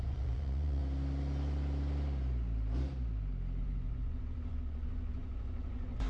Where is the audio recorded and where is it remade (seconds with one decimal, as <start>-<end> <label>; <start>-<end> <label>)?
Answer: 0.0-0.8 remade; 0.8-3.6 recorded; 3.6-6.1 remade

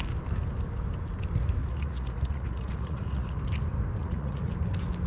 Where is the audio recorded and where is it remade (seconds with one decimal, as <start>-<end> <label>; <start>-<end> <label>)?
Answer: 0.0-1.6 recorded; 1.6-3.4 remade; 3.4-4.0 recorded; 4.0-4.5 remade; 4.5-5.1 recorded

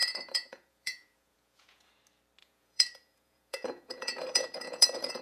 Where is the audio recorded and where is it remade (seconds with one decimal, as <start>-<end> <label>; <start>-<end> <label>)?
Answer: 0.0-1.9 remade; 1.9-2.4 recorded; 2.4-5.2 remade

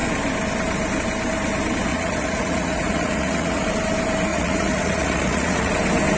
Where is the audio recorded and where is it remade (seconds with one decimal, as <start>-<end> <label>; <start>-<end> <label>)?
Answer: 0.0-1.9 recorded; 1.9-3.7 remade; 3.7-4.3 recorded; 4.3-5.7 remade; 5.7-6.2 recorded

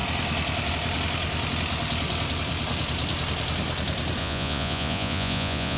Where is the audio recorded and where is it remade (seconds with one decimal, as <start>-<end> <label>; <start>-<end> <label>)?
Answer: 0.0-4.2 recorded; 4.2-5.8 remade